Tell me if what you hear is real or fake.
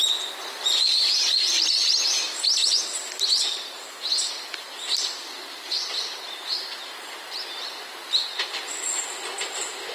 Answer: real